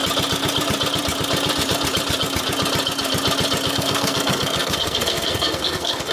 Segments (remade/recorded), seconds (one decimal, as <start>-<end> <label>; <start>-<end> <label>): 0.0-3.7 recorded; 3.7-6.1 remade